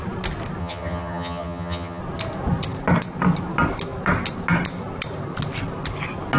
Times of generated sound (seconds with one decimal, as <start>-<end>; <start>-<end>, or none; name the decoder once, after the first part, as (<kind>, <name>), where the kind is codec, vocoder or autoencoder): 0.6-2.0 (vocoder, HiFi-GAN)